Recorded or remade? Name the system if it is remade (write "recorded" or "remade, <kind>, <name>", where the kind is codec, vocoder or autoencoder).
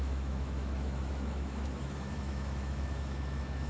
remade, autoencoder, DAC-VAE